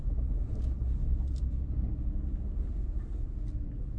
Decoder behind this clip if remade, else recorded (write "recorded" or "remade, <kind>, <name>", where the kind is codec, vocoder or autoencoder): recorded